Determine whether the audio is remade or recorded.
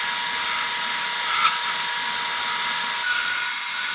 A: recorded